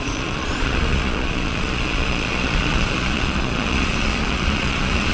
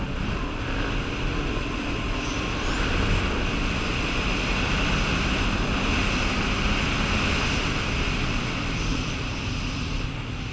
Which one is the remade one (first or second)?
first